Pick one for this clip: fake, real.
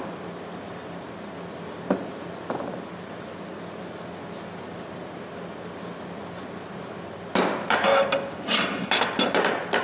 real